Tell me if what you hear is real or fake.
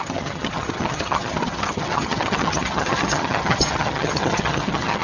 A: fake